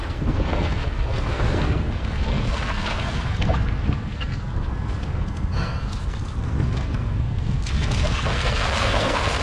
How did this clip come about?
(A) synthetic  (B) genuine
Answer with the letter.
A